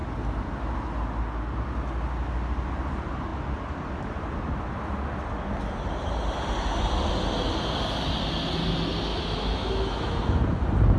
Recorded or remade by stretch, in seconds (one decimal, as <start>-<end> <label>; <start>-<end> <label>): 0.0-9.1 recorded; 9.1-10.2 remade; 10.2-11.0 recorded